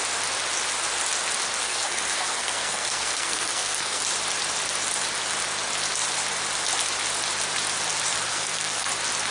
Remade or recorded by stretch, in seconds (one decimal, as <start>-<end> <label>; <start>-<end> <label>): 0.0-1.6 recorded; 1.6-4.0 remade; 4.0-8.3 recorded; 8.3-8.9 remade; 8.9-9.3 recorded